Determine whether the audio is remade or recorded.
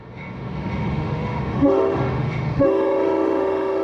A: remade